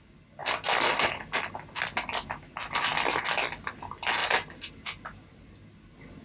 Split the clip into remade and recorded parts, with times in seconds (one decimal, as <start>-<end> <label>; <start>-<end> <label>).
0.0-4.2 recorded; 4.2-5.4 remade; 5.4-6.2 recorded